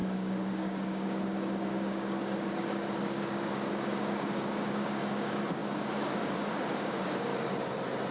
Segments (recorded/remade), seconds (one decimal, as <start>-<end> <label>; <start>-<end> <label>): 0.0-7.3 remade; 7.3-8.1 recorded